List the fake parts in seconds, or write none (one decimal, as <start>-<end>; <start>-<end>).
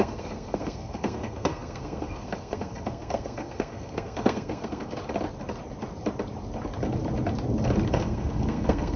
0.0-5.0; 7.9-9.0